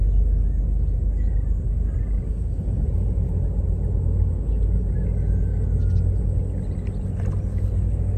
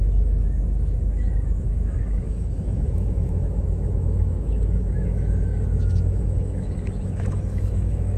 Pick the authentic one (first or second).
first